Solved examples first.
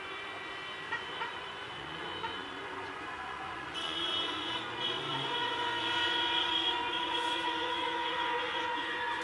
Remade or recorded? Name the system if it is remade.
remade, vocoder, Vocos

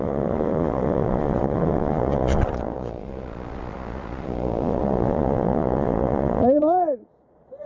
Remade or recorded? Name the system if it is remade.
remade, vocoder, Vocos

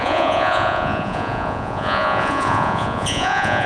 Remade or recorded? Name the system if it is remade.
remade, vocoder, Vocos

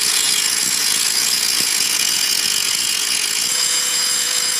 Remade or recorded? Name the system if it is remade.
remade, vocoder, Vocos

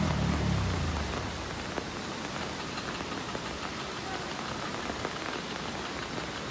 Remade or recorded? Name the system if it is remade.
recorded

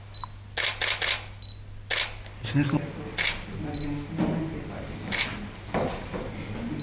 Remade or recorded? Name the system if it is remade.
recorded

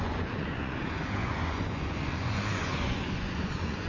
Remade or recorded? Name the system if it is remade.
remade, vocoder, Vocos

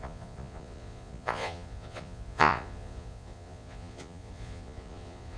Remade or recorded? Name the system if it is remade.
remade, vocoder, Vocos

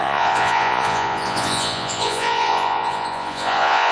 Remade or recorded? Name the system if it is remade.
remade, vocoder, Vocos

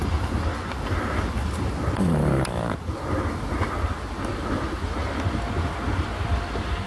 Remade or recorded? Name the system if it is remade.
recorded